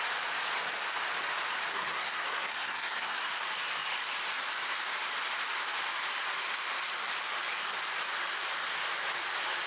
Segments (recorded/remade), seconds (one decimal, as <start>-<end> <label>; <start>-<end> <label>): 0.0-1.7 recorded; 1.7-3.3 remade; 3.3-9.7 recorded

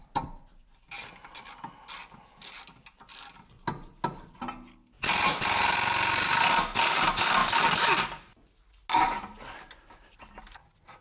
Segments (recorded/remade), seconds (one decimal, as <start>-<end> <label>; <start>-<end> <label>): 0.0-11.0 recorded

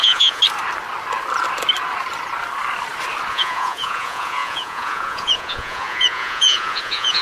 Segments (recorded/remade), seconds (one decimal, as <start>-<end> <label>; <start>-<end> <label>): 0.0-0.4 remade; 0.4-3.3 recorded; 3.3-7.2 remade

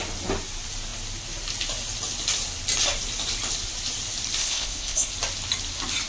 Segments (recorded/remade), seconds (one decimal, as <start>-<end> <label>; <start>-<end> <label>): 0.0-4.4 recorded; 4.4-5.1 remade; 5.1-6.1 recorded

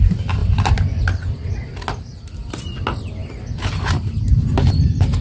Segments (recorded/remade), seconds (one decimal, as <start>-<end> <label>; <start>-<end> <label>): 0.0-5.2 recorded

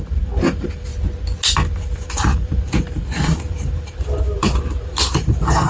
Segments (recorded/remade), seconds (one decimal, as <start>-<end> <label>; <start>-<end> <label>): 0.0-0.9 remade; 0.9-1.8 recorded; 1.8-5.7 remade

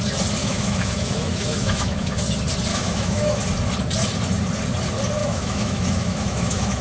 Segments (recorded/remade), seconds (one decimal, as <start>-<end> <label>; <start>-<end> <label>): 0.0-0.4 recorded; 0.4-2.2 remade; 2.2-2.7 recorded; 2.7-3.4 remade; 3.4-5.2 recorded; 5.2-6.8 remade